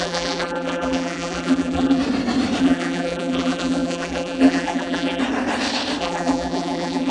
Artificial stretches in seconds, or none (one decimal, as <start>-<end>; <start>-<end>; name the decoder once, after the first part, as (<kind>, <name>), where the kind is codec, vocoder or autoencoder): 0.0-2.0 (vocoder, BigVGAN v2); 2.6-5.2; 6.0-7.1